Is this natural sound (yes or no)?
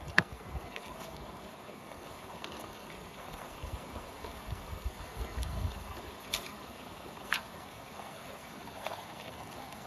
no